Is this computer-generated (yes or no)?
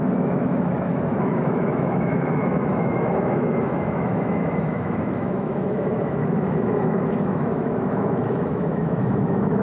yes